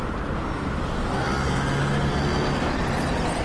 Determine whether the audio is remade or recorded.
recorded